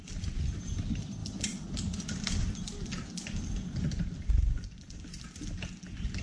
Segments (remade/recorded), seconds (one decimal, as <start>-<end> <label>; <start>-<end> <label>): 0.0-6.2 recorded